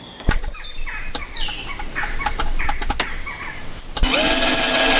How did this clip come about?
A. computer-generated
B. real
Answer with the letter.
B